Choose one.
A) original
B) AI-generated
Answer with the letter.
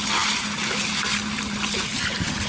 A